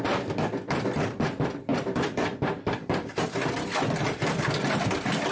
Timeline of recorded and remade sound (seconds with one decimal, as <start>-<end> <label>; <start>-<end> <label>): 0.0-1.7 recorded; 1.7-3.8 remade; 3.8-5.3 recorded